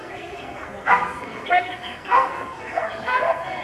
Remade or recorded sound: remade